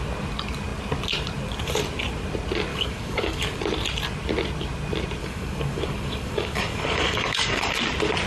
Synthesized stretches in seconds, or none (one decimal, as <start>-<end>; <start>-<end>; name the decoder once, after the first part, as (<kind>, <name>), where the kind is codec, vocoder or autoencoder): 2.7-3.6 (codec, DAC); 5.2-7.7